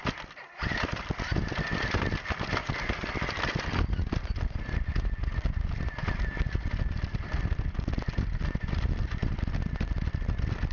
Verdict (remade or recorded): recorded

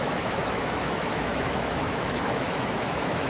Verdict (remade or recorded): remade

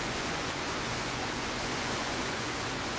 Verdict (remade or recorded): remade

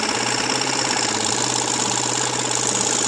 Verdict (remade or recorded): recorded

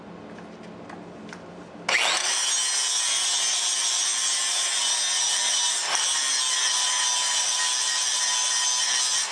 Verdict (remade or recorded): recorded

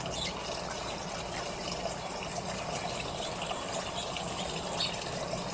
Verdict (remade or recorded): recorded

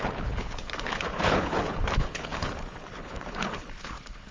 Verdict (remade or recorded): remade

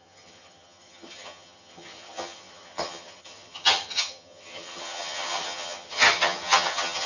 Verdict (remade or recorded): remade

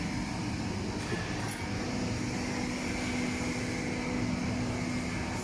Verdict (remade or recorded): recorded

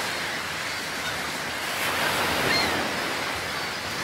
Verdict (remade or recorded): recorded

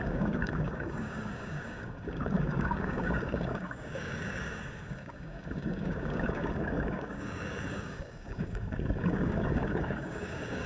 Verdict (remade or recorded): remade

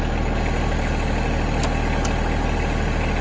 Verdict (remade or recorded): recorded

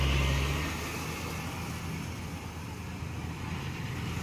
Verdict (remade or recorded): recorded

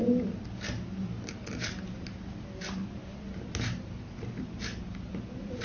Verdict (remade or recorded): recorded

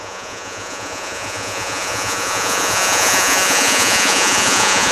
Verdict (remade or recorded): remade